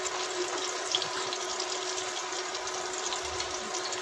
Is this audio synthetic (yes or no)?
no